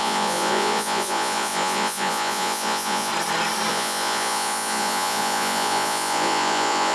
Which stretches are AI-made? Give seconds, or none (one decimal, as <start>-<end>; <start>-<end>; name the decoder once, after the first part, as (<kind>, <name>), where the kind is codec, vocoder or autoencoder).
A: 0.0-3.1 (vocoder, Vocos); 3.7-6.9